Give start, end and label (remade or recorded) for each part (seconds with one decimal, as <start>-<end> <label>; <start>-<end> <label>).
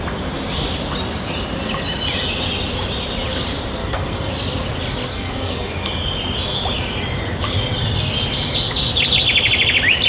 0.0-3.8 recorded; 3.8-4.3 remade; 4.3-5.1 recorded; 5.1-5.7 remade; 5.7-10.1 recorded